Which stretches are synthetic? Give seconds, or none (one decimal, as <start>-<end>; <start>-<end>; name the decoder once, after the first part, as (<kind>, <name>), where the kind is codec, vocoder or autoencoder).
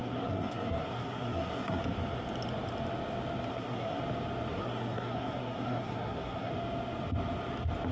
0.0-1.8 (codec, SNAC); 3.5-4.0; 4.5-6.5